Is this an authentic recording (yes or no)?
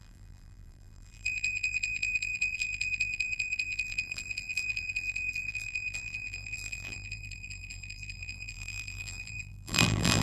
no